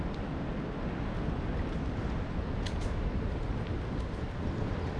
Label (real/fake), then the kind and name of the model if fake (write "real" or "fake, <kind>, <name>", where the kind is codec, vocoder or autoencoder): real